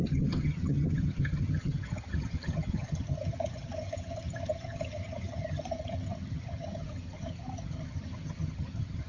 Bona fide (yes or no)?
no